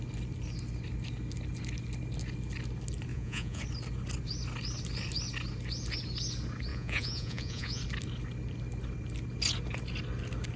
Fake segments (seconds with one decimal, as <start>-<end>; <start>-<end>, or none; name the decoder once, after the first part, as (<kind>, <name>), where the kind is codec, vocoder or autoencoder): 3.1-3.6 (vocoder, Vocos); 6.7-7.8